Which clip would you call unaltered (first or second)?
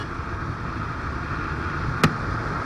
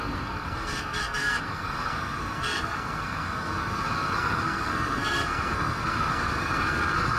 first